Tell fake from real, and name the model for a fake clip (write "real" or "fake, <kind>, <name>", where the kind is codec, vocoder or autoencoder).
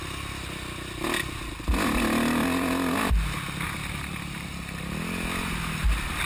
real